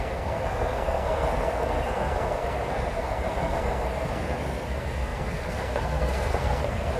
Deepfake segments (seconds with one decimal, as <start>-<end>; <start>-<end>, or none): 0.0-7.0